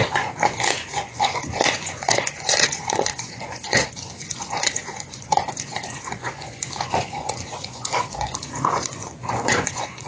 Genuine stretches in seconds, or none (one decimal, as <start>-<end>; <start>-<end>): none